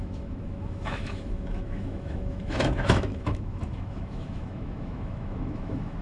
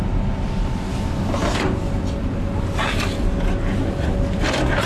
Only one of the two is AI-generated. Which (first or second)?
first